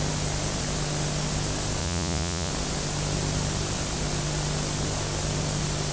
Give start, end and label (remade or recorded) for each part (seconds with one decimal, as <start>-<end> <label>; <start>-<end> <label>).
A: 0.0-1.8 recorded; 1.8-2.5 remade; 2.5-5.9 recorded